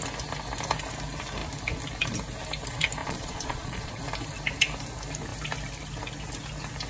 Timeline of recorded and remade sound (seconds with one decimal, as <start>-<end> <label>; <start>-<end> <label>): 0.0-3.0 recorded; 3.0-4.0 remade; 4.0-6.9 recorded